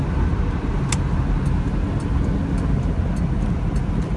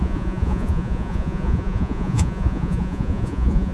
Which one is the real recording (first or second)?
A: first